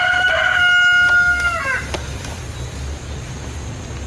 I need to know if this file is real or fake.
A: real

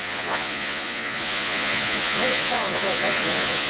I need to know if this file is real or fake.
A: fake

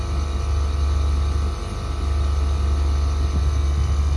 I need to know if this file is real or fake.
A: real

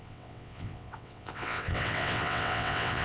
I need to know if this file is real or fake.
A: fake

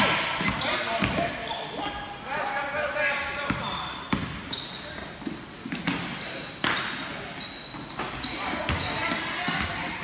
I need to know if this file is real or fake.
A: real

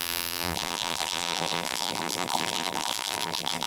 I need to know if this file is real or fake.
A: fake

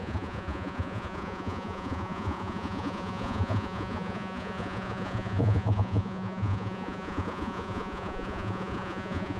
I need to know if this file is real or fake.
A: fake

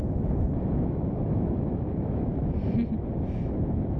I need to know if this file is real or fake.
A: fake